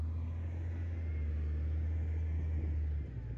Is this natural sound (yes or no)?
yes